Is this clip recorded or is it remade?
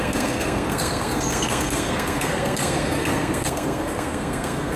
remade